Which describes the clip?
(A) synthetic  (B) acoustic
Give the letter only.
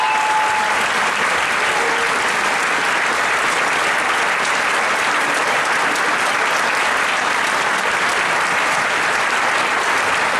B